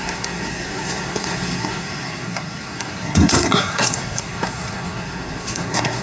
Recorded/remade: remade